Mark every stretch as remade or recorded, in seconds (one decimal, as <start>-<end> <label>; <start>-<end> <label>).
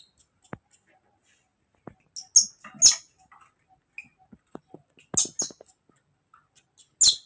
0.0-7.3 recorded